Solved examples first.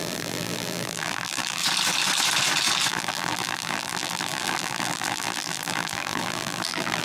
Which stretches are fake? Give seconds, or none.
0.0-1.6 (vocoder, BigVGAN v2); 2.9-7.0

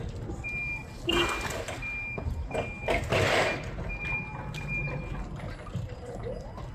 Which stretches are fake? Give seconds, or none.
5.7-6.2 (vocoder, BigVGAN v2)